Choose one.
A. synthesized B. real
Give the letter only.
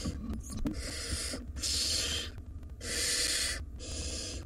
B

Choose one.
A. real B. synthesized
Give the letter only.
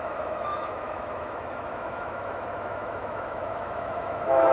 B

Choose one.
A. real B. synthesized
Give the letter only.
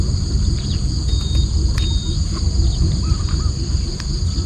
A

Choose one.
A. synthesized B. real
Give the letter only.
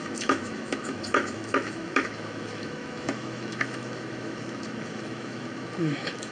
A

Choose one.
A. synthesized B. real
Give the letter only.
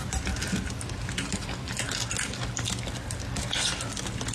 B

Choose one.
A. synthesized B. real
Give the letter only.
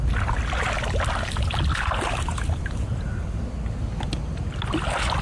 B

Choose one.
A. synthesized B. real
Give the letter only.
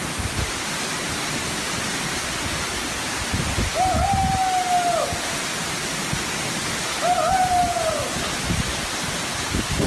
B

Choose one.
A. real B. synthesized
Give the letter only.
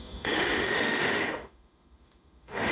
B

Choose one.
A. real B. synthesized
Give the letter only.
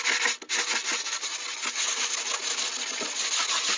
A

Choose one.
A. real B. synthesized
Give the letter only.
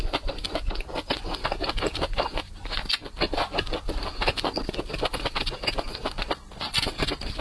A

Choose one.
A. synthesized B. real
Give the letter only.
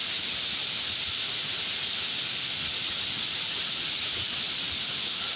B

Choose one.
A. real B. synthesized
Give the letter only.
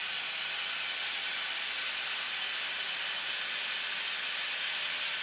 A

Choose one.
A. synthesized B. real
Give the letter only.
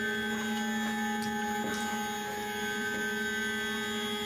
B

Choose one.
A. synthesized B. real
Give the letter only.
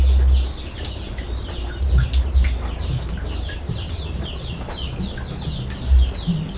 B